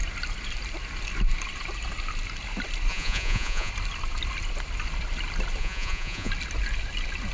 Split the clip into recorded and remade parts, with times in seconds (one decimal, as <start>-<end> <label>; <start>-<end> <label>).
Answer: 0.0-2.9 recorded; 2.9-3.7 remade; 3.7-5.6 recorded; 5.6-6.3 remade; 6.3-7.3 recorded